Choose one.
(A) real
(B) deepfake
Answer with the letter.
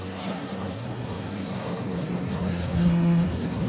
B